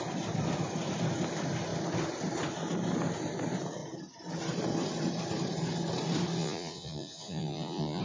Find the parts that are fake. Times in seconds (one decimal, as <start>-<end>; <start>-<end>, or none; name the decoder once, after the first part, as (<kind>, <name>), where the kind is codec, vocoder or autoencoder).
6.4-8.0 (vocoder, Vocos)